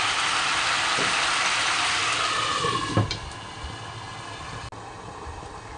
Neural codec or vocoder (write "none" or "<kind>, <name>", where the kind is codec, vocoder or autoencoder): none